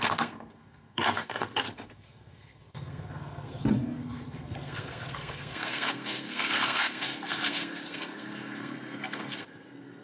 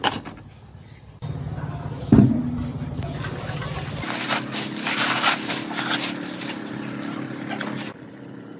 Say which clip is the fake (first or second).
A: first